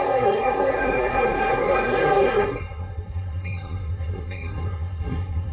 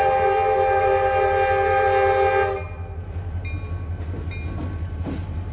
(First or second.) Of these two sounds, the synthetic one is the first